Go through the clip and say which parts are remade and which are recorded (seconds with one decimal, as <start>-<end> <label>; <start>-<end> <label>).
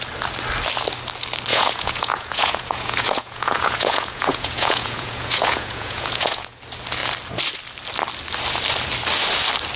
0.0-1.5 recorded; 1.5-6.6 remade; 6.6-9.8 recorded